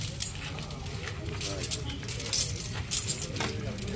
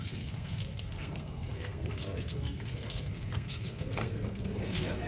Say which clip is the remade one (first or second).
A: second